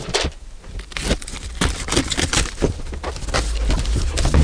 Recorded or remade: recorded